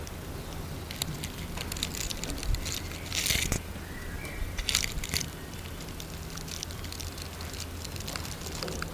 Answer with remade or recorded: recorded